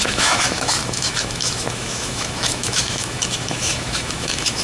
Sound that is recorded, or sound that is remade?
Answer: remade